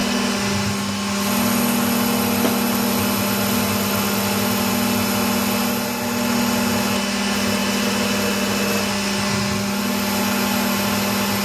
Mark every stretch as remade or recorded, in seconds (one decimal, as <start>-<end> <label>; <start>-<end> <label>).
0.0-11.4 recorded